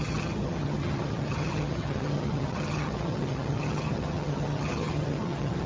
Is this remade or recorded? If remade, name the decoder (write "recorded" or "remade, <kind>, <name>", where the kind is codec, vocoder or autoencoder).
remade, vocoder, HiFi-GAN